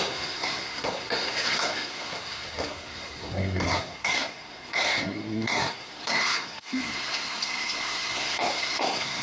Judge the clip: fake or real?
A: fake